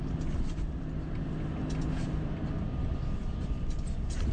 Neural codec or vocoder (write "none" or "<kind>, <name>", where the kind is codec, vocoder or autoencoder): none